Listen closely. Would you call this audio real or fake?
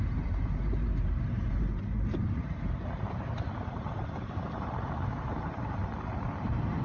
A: fake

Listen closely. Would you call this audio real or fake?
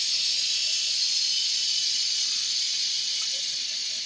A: fake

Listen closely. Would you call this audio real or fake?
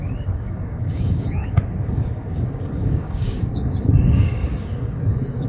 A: fake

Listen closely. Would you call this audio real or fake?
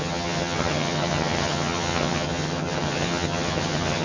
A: fake